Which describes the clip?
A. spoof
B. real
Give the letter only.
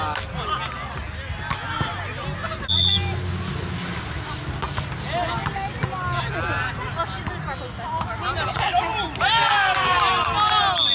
B